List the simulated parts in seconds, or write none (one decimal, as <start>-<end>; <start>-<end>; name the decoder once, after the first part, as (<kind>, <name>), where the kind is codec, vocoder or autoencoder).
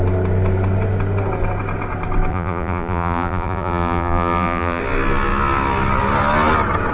2.3-4.8 (vocoder, BigVGAN v2)